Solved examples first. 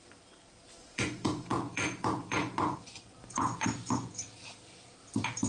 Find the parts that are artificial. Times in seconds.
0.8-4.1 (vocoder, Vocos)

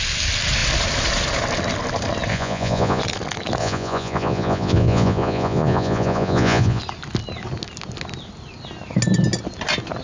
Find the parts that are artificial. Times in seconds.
2.3-3.0 (vocoder, Vocos); 3.6-6.8

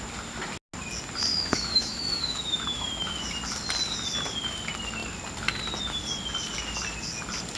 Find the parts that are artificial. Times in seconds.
1.3-3.4 (autoencoder, DAC-VAE)

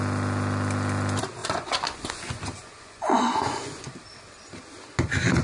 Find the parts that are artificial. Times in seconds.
1.4-3.9 (vocoder, Vocos)

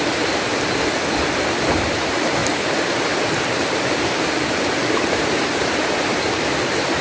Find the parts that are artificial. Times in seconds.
0.0-0.5 (vocoder, BigVGAN v2); 1.4-2.4; 3.3-6.1; 6.6-7.0

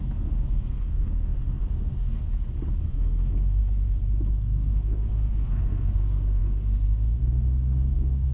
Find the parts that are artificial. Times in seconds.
0.0-2.2 (codec, SNAC); 2.8-3.6; 4.3-8.3